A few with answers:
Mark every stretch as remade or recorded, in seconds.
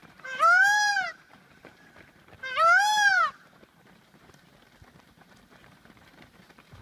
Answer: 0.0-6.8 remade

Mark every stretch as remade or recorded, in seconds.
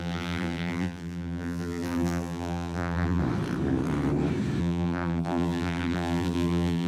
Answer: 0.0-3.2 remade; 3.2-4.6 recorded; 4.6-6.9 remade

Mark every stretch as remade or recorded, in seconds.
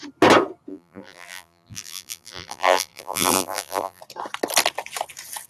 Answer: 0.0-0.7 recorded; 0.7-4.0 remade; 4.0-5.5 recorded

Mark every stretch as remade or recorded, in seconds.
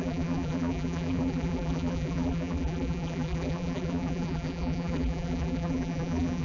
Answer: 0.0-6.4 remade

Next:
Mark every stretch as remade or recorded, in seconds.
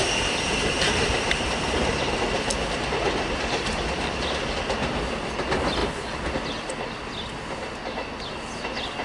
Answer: 0.0-1.9 remade; 1.9-9.0 recorded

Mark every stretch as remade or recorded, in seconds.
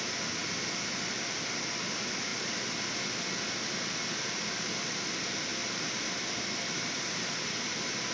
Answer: 0.0-0.4 recorded; 0.4-1.9 remade; 1.9-2.3 recorded; 2.3-2.9 remade; 2.9-5.5 recorded; 5.5-7.6 remade; 7.6-8.1 recorded